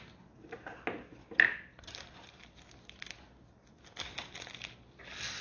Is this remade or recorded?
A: recorded